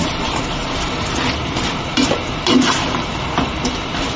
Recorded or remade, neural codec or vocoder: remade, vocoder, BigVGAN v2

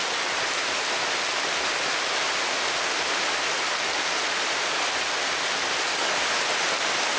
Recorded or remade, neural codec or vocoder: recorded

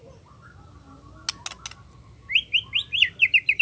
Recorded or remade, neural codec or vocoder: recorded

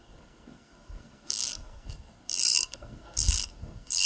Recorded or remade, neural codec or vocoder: remade, codec, SNAC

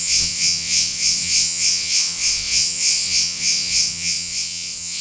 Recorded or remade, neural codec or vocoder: remade, vocoder, WaveNeXt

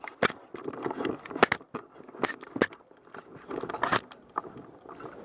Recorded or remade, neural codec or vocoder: recorded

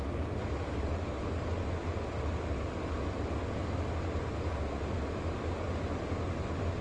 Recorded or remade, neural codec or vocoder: recorded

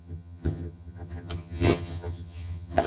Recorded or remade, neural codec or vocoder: remade, vocoder, HiFi-GAN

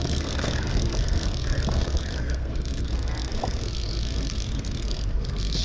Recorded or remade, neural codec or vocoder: remade, codec, SNAC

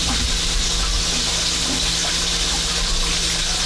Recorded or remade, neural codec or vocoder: recorded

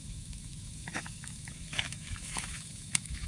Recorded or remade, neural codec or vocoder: remade, autoencoder, DAC-VAE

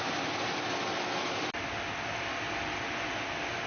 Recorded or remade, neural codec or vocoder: recorded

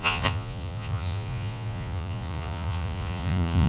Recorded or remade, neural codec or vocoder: remade, vocoder, Vocos